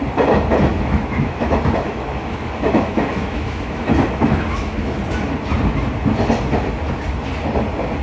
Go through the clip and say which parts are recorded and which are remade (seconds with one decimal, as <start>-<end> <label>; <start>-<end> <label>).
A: 0.0-0.7 recorded; 0.7-5.0 remade; 5.0-8.0 recorded